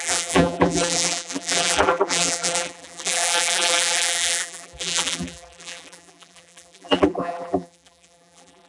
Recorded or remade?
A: remade